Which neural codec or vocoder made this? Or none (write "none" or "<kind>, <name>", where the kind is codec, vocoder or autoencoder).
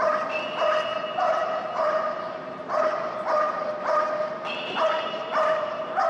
none